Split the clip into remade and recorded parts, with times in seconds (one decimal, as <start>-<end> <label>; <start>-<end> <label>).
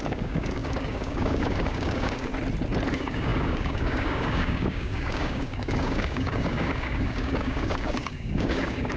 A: 0.0-2.3 remade; 2.3-2.9 recorded; 2.9-9.0 remade